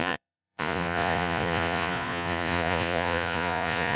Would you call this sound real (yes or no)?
no